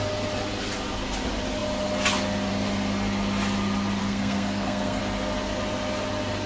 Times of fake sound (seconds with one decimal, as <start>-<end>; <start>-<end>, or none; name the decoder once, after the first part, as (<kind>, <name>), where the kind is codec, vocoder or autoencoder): 4.0-5.0 (codec, SNAC)